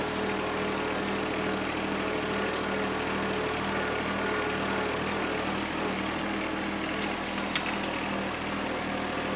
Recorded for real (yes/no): yes